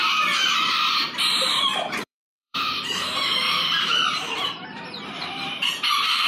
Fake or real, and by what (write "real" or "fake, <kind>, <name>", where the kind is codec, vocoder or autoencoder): fake, vocoder, BigVGAN v2